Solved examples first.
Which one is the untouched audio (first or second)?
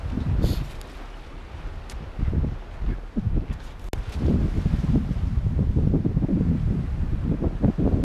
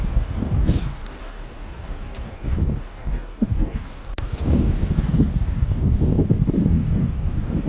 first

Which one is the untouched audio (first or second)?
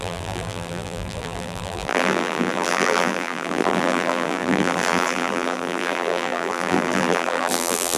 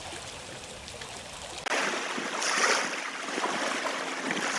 second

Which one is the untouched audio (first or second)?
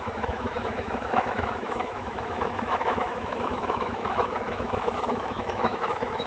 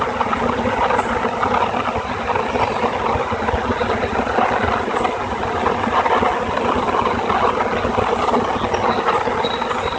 second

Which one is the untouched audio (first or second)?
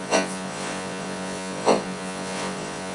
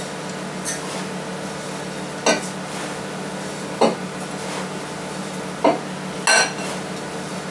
second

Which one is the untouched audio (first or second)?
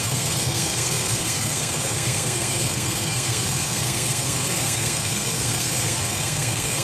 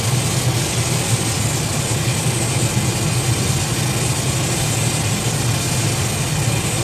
second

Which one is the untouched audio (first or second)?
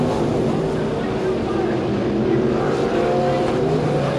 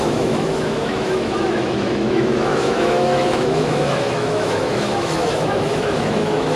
first